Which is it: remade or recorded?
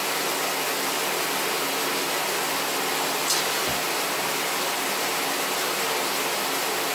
recorded